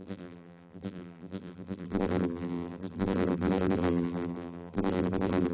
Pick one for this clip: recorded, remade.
remade